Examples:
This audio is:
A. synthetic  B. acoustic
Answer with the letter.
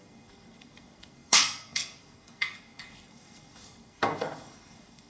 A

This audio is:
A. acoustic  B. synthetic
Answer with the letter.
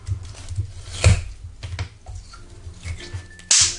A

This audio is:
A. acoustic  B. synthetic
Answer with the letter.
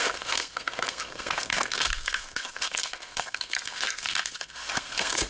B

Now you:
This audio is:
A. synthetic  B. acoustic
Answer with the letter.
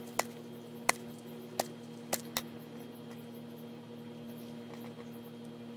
B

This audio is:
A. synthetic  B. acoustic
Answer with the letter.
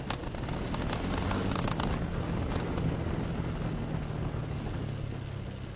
B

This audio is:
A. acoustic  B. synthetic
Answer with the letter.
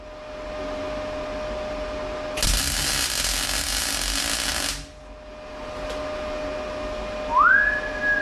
A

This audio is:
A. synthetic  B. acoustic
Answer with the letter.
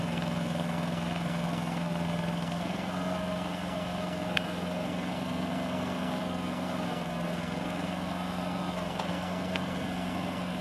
A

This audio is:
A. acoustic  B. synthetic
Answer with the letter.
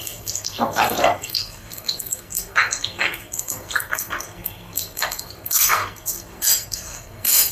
B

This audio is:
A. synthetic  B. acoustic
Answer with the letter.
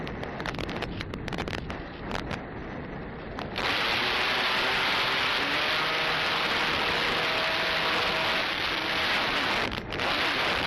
B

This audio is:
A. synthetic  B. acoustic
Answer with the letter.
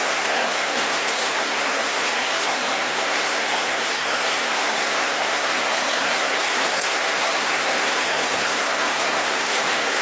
A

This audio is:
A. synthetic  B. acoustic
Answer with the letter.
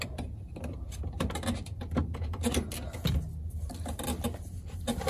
B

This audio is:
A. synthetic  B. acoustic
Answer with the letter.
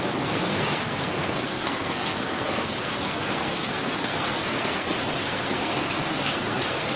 A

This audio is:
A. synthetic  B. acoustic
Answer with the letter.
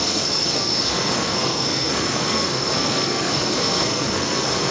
A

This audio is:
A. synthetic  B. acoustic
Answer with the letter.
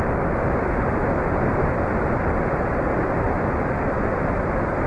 B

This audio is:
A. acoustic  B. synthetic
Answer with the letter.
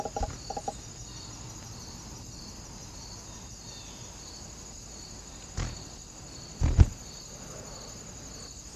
A